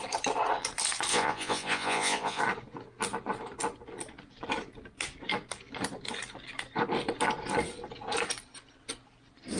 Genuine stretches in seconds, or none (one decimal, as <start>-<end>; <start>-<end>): 0.0-1.1; 2.4-9.6